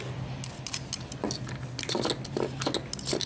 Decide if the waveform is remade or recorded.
recorded